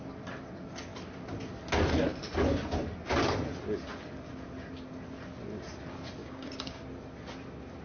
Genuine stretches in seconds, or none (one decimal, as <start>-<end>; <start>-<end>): 0.0-6.2; 6.8-7.8